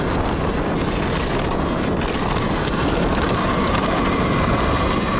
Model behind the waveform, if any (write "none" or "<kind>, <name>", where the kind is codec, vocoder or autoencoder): none